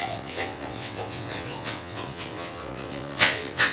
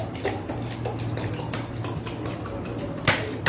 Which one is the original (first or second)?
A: second